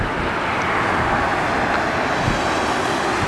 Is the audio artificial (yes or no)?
no